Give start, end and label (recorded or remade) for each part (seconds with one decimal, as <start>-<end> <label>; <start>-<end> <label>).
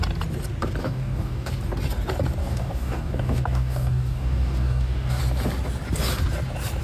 0.0-0.8 recorded; 0.8-1.5 remade; 1.5-2.4 recorded; 2.4-5.2 remade; 5.2-6.8 recorded